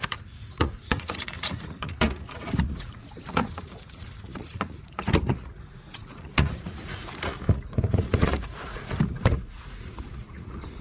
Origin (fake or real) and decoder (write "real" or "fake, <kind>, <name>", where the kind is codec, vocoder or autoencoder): fake, vocoder, Vocos